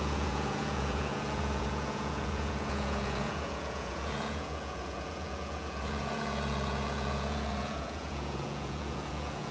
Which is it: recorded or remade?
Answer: remade